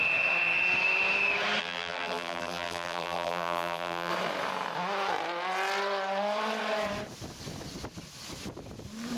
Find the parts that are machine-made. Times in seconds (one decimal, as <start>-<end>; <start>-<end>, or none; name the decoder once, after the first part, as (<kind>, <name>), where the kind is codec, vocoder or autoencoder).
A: 1.6-4.1 (vocoder, BigVGAN v2)

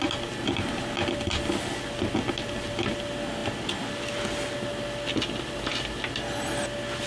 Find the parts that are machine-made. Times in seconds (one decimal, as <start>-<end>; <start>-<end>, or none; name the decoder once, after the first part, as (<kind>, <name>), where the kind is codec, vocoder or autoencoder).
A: none

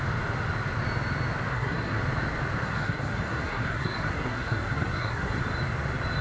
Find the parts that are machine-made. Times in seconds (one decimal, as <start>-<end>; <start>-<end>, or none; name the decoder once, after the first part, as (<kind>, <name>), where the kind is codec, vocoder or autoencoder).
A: 1.5-2.0 (codec, SNAC); 2.6-5.4

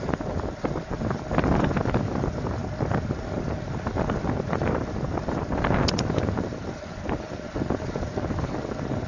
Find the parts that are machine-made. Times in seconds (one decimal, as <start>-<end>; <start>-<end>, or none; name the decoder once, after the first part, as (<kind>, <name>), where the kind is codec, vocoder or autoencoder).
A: none

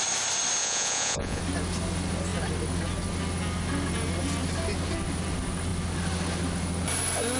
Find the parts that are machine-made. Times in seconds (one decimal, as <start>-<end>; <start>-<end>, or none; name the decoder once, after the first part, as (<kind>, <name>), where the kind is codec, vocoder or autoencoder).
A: 0.6-1.4 (vocoder, Vocos)

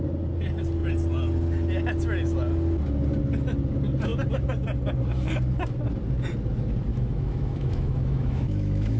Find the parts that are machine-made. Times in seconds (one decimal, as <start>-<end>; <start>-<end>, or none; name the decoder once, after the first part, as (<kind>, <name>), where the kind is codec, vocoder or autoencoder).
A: 6.9-9.0 (autoencoder, DAC-VAE)

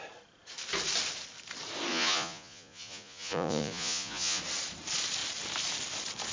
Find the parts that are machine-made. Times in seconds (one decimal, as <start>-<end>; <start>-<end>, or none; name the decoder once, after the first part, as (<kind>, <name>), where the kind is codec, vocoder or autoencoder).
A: 1.9-4.4 (vocoder, Vocos)